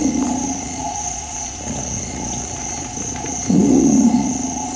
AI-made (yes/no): yes